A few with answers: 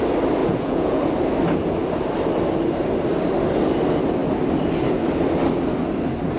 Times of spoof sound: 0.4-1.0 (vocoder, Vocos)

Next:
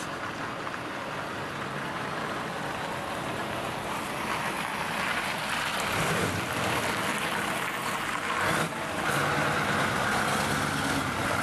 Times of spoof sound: none

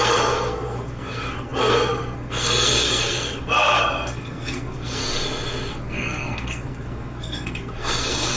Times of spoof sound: 0.0-5.0 (codec, SNAC); 5.7-8.4

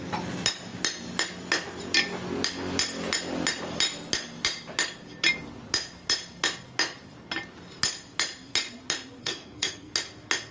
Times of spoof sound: 9.2-9.9 (codec, SNAC)

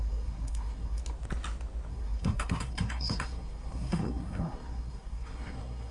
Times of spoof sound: 0.0-1.0 (codec, SNAC); 1.9-5.9